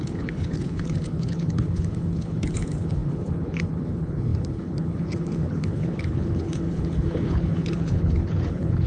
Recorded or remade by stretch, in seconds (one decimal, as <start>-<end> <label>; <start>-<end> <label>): 0.0-8.9 remade